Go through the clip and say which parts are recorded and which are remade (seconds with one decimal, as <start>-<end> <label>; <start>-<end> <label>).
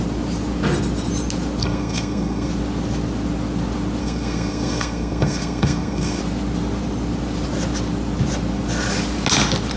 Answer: 0.0-1.6 recorded; 1.6-2.5 remade; 2.5-4.0 recorded; 4.0-6.2 remade; 6.2-9.8 recorded